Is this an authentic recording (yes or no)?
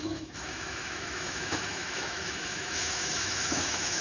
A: no